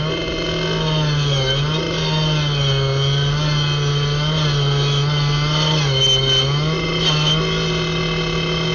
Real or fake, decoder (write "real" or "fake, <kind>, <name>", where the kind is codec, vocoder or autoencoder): real